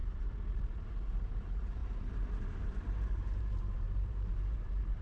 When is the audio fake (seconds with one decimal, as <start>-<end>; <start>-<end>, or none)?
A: 1.3-5.0